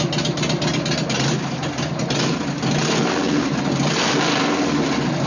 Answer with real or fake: real